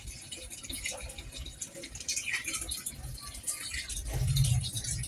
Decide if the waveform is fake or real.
real